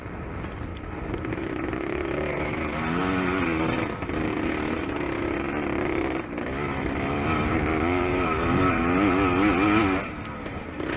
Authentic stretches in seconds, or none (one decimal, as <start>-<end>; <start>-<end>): 0.0-0.7; 1.4-8.1; 8.8-11.0